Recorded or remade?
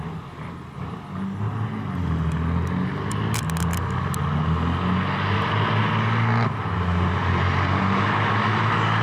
recorded